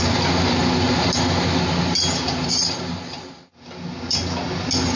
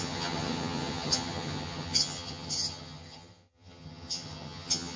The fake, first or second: second